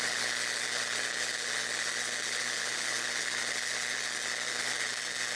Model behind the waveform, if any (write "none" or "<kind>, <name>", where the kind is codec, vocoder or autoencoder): none